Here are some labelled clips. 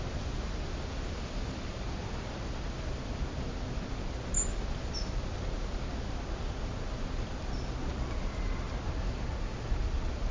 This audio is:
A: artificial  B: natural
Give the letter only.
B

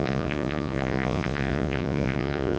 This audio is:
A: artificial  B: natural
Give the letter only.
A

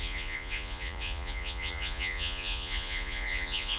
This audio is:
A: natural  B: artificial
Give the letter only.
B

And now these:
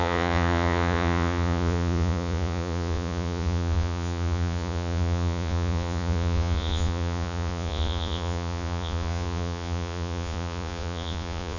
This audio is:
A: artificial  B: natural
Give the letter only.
A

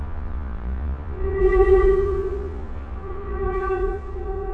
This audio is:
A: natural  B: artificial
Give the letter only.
B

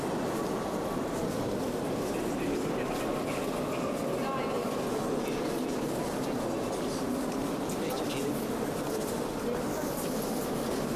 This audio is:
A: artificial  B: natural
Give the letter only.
B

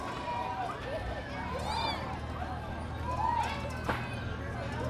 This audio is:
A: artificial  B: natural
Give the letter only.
B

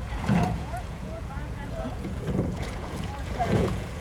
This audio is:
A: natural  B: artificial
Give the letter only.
B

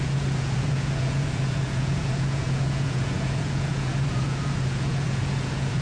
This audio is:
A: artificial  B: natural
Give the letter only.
A